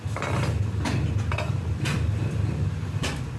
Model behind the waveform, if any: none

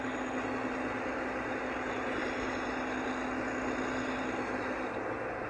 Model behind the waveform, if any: none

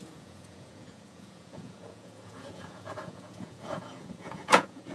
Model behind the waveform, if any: vocoder, Vocos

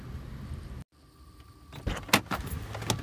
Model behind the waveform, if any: none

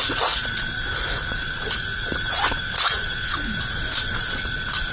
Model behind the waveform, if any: vocoder, Vocos